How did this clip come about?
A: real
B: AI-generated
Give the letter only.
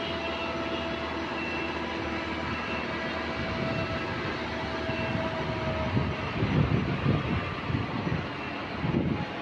A